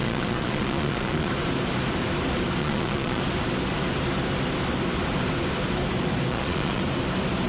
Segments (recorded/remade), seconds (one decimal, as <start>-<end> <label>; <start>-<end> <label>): 0.0-1.3 remade; 1.3-2.6 recorded; 2.6-3.2 remade; 3.2-6.3 recorded; 6.3-6.8 remade; 6.8-7.5 recorded